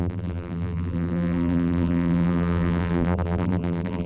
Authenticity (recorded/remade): remade